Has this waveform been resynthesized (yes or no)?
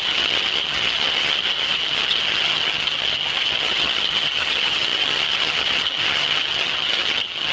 yes